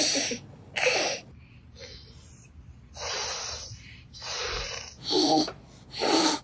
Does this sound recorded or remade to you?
recorded